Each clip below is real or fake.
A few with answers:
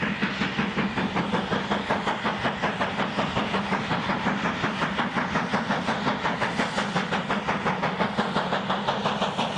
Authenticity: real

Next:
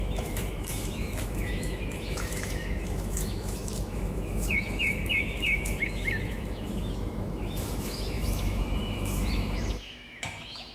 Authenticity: fake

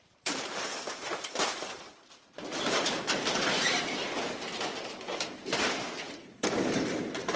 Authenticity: fake